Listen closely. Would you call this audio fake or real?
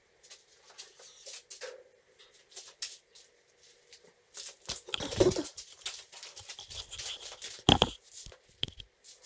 real